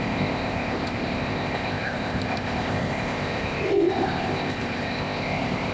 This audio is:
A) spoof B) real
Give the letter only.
A